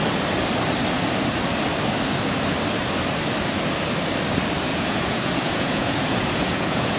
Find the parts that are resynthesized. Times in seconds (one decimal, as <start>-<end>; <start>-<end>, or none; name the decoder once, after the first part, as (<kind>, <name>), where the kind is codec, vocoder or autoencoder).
4.7-7.0 (vocoder, Vocos)